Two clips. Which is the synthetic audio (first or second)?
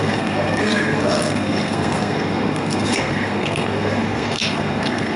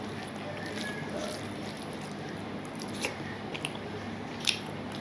first